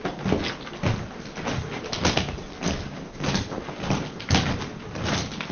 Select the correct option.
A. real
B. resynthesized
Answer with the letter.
A